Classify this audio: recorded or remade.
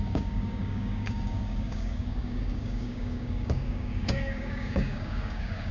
remade